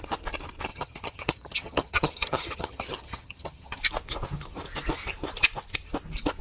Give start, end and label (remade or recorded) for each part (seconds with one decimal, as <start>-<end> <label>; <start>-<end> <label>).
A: 0.0-0.7 recorded; 0.7-3.8 remade; 3.8-6.4 recorded